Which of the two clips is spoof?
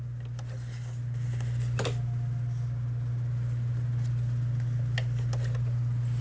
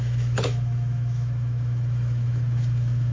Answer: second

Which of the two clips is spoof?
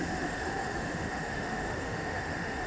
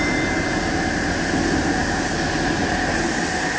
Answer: first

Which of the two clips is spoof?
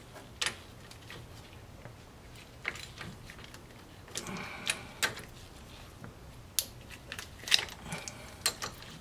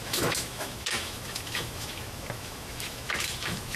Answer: second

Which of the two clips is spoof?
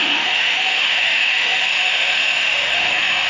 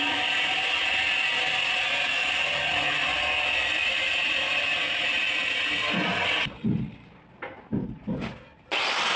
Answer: first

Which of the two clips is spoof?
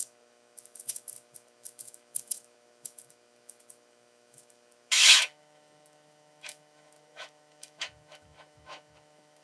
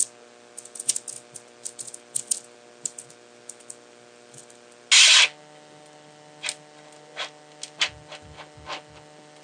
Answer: first